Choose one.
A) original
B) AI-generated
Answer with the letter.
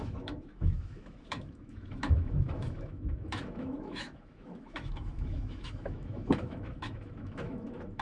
B